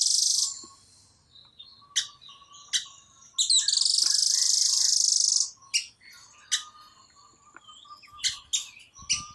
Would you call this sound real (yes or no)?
yes